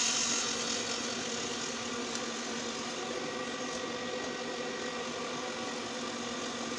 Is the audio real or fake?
real